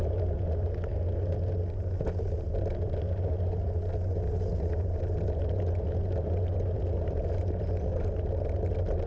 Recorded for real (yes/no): yes